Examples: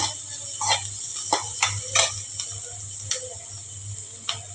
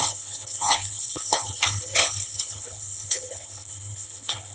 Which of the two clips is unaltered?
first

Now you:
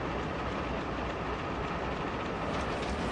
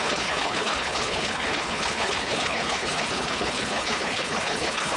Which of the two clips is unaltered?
first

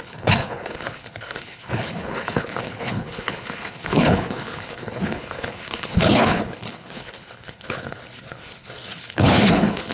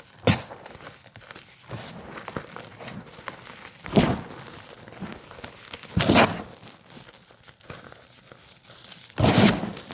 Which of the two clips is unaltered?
second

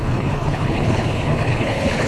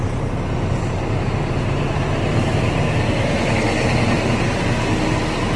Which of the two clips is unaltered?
second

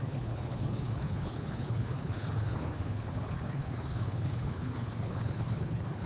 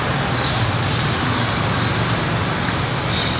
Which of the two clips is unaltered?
second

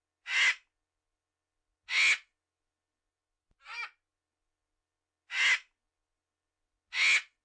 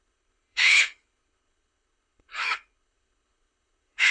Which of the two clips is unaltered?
first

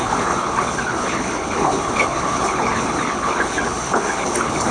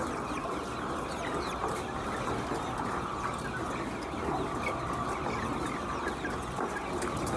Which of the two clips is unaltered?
second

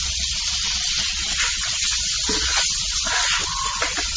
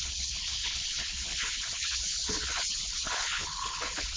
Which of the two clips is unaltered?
first